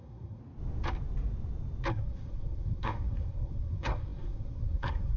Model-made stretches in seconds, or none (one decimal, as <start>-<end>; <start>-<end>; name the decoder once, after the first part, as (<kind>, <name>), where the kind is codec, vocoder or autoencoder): 0.0-0.4 (codec, SNAC); 1.9-5.2